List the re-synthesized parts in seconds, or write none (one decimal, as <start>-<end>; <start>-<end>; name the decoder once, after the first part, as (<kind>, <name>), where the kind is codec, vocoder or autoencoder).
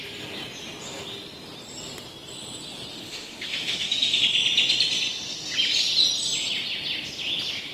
2.9-4.2 (autoencoder, DAC-VAE)